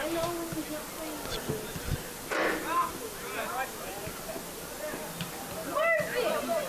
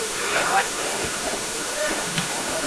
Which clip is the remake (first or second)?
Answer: second